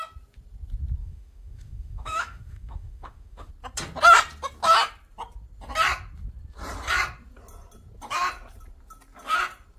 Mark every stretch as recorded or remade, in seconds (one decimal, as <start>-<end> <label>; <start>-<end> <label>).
0.0-1.0 recorded; 1.0-3.5 remade; 3.5-9.8 recorded